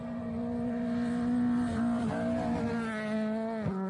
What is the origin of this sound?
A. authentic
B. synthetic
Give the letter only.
A